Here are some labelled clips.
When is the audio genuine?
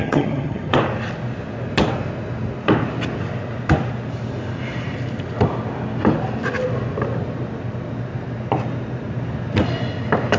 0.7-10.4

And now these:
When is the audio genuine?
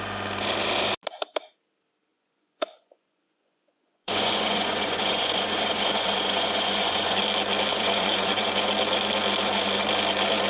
0.0-2.1; 7.2-7.7; 8.5-10.5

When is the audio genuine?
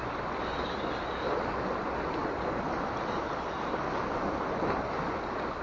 0.0-5.6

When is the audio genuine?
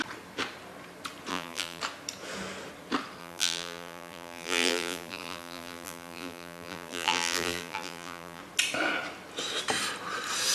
0.0-1.3; 1.8-3.2; 8.4-10.5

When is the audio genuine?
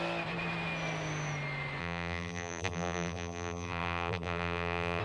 0.0-1.8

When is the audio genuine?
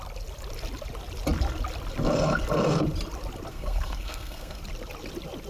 0.0-3.5; 4.6-5.5